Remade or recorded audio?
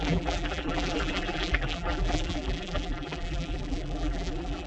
remade